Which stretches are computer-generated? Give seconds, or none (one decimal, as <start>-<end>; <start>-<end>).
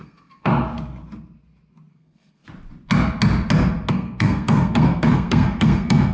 0.0-0.5; 1.9-2.4; 3.9-6.1